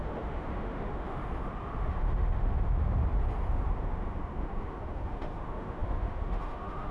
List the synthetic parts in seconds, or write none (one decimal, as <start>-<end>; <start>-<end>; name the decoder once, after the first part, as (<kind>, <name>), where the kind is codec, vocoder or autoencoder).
0.0-1.2 (autoencoder, DAC-VAE); 1.8-3.0; 3.5-6.9

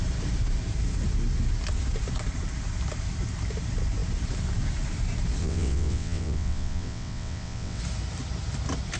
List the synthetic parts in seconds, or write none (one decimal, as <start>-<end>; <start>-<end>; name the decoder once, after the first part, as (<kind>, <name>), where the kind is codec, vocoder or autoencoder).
5.4-7.8 (vocoder, WaveNeXt)

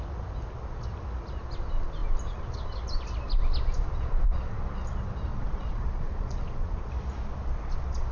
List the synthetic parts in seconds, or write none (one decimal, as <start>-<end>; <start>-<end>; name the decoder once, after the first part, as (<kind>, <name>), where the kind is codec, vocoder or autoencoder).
5.3-6.9 (vocoder, Vocos)

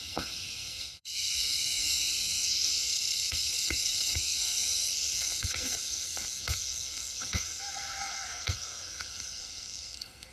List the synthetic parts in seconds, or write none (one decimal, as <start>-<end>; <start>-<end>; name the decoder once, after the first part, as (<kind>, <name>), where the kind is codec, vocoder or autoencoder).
0.0-10.3 (codec, SNAC)

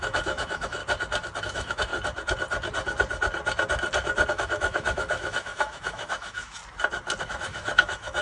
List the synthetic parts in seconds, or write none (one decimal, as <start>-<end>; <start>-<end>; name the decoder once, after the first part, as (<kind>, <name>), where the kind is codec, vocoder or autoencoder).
0.0-0.8 (autoencoder, DAC-VAE); 1.4-1.9; 4.3-6.6; 7.2-8.2

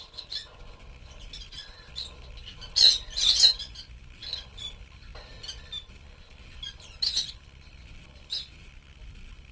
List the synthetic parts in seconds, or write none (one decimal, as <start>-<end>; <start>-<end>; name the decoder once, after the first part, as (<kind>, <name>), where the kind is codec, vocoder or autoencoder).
none

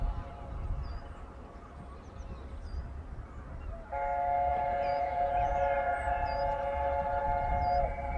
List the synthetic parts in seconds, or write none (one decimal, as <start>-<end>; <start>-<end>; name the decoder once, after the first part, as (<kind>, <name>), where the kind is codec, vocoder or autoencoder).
4.5-5.5 (vocoder, Vocos)